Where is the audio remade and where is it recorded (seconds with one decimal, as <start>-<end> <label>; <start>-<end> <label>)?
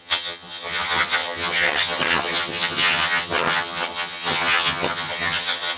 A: 0.0-5.8 remade